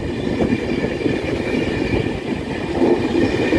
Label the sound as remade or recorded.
recorded